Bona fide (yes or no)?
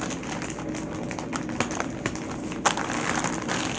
yes